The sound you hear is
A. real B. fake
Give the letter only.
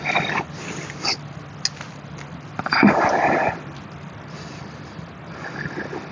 A